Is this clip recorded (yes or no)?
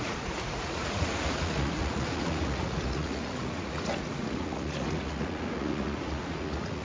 no